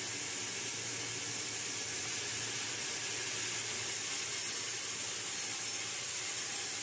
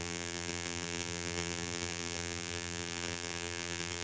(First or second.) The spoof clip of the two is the second